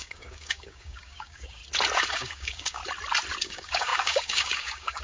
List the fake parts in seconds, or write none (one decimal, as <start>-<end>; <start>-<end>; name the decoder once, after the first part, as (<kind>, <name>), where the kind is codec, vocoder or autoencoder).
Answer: 0.0-1.6 (codec, DAC); 2.1-2.8; 3.4-5.0